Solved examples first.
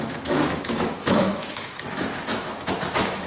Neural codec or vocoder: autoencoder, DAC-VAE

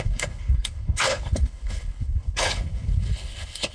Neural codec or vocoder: codec, HILCodec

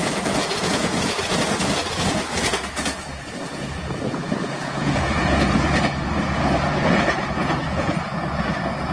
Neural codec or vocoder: vocoder, Vocos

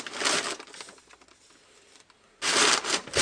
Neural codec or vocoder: none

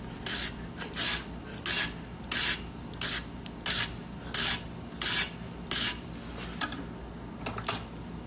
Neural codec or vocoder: none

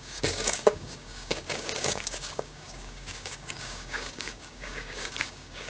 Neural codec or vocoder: codec, DAC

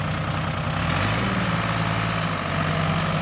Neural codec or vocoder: none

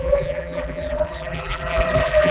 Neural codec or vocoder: vocoder, BigVGAN v2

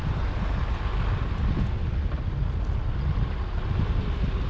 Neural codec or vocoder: none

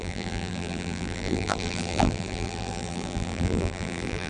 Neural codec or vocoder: vocoder, BigVGAN v2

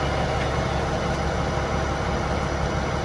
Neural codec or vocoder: none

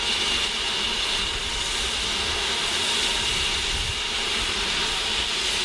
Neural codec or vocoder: none